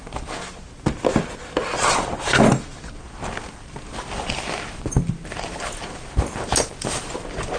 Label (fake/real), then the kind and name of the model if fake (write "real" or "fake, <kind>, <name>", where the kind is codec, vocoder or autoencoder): real